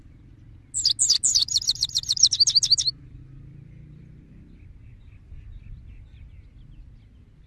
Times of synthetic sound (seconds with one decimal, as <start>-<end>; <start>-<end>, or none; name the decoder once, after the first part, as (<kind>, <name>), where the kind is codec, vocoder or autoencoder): 1.4-3.2 (vocoder, BigVGAN v2)